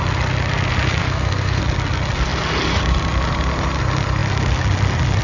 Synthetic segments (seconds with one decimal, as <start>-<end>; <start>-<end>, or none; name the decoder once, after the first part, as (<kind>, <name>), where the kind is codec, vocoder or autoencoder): 1.0-1.6 (codec, SNAC)